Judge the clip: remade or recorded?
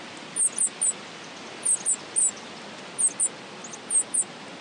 recorded